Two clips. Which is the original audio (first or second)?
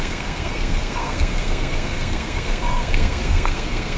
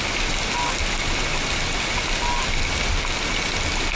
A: second